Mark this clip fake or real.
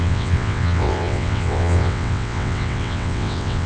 fake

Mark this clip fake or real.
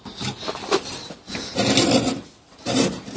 real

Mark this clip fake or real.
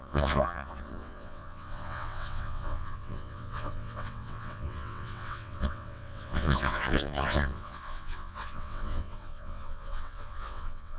fake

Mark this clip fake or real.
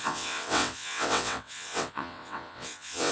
fake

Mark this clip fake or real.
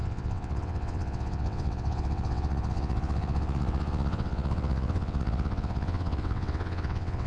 fake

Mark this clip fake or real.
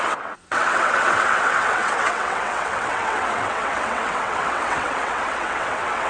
fake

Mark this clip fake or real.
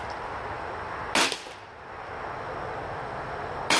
real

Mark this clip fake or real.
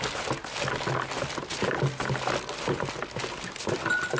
real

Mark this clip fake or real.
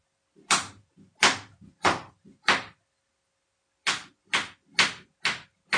real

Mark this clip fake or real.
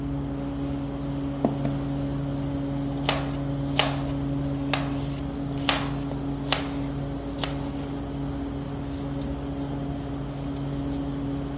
real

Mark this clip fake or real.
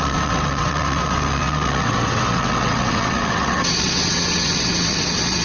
fake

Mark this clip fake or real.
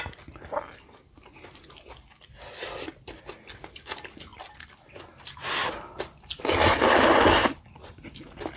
real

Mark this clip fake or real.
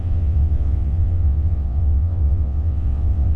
fake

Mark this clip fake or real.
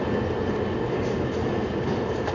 real